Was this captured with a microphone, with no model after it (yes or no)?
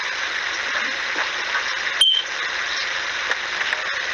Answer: yes